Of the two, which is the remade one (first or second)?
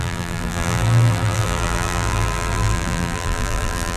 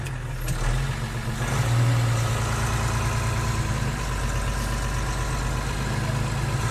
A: first